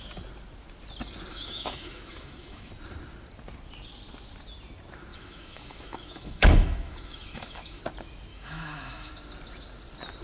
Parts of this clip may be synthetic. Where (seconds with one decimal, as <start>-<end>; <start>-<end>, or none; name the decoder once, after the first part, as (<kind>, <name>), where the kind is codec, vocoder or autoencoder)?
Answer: 1.3-2.7 (autoencoder, DAC-VAE); 5.1-7.8; 8.3-9.1